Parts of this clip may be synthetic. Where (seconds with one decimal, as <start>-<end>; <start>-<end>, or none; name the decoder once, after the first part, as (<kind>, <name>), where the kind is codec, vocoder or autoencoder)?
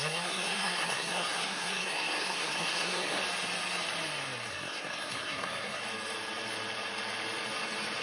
0.0-3.2 (codec, SNAC); 4.5-5.8